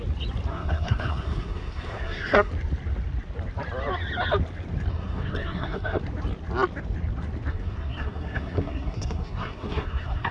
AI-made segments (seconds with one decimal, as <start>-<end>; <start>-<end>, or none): 0.5-2.5; 4.9-6.0; 7.5-10.3